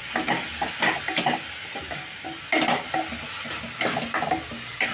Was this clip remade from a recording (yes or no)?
no